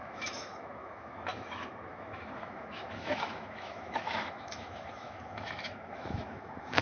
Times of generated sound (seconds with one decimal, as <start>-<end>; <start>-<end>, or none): 0.0-6.8